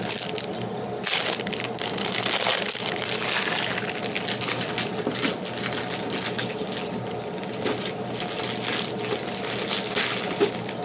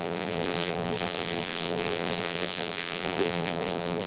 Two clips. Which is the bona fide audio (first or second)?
first